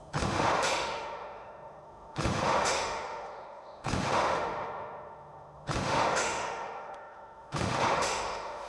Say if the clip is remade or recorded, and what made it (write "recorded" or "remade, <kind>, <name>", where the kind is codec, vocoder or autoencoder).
remade, autoencoder, DAC-VAE